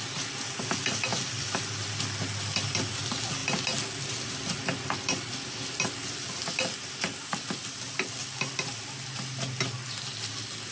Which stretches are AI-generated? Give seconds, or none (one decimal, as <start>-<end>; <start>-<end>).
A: 1.1-1.6